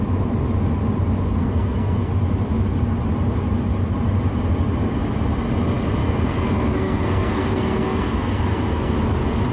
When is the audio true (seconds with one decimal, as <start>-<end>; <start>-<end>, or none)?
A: 0.0-1.4; 2.1-6.0; 8.9-9.5